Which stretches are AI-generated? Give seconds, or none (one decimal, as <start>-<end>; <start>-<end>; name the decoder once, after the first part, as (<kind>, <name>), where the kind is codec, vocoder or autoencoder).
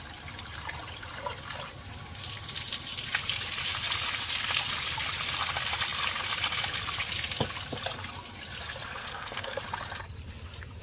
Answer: 9.0-9.6 (codec, SNAC)